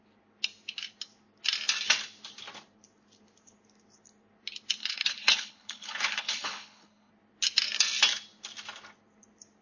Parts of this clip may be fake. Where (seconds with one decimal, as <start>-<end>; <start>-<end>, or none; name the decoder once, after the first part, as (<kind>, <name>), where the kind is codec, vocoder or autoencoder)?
4.8-7.1 (codec, HILCodec)